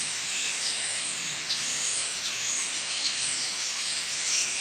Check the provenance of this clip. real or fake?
fake